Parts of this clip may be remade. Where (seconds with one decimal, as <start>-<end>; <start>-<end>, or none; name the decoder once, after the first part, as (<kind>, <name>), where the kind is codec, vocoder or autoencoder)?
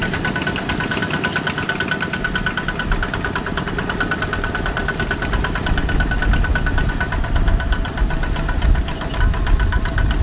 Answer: none